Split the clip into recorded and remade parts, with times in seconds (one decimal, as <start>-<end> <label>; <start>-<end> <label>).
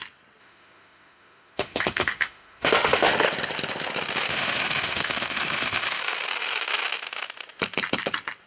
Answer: 0.0-0.4 recorded; 0.4-3.1 remade; 3.1-4.3 recorded; 4.3-6.0 remade; 6.0-8.5 recorded